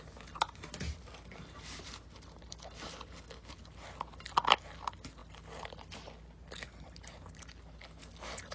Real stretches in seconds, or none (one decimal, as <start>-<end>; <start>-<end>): 0.0-8.5